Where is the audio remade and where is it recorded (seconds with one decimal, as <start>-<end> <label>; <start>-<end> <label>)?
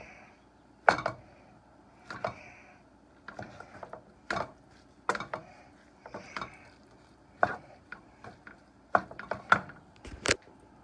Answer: 0.0-10.8 recorded